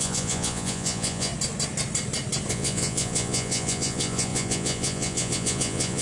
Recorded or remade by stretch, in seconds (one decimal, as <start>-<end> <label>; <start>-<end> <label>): 0.0-1.3 remade; 1.3-2.5 recorded; 2.5-6.0 remade